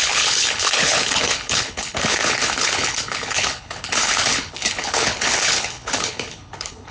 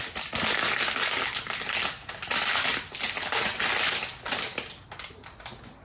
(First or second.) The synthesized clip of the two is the first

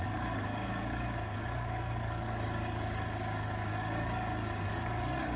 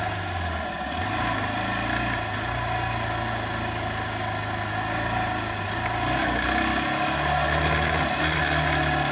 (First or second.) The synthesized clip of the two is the first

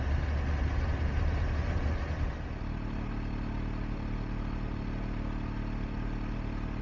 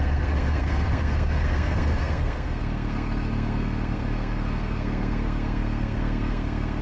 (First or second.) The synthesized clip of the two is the second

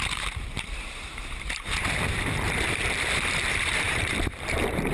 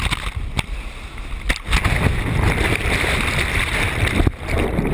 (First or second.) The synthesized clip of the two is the first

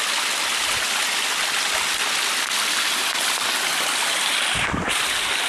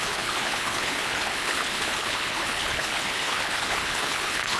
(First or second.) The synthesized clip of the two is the second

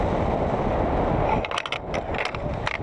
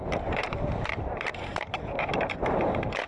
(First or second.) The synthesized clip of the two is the second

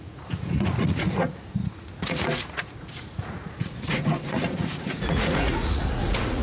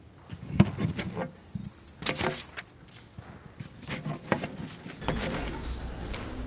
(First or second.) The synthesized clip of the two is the first